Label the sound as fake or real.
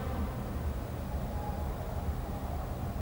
real